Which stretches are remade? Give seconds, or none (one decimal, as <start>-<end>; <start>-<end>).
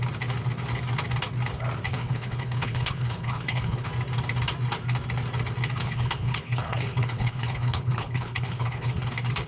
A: 1.9-3.9; 5.8-9.1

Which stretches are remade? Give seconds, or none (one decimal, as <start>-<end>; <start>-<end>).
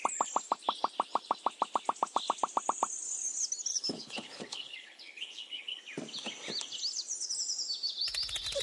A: 3.7-5.8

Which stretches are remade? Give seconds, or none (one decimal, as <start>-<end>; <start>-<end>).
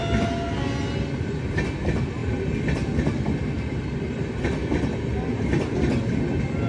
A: none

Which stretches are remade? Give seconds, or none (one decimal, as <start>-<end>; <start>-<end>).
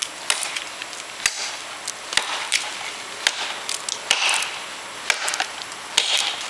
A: none